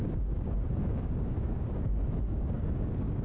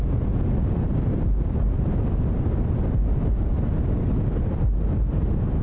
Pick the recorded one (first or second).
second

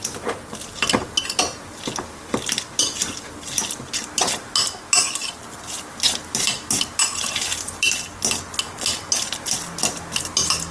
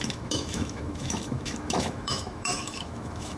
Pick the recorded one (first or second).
first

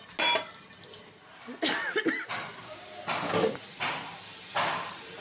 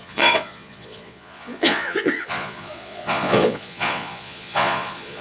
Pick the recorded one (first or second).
first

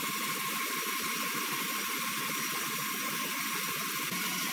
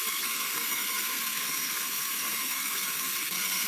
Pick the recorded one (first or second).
first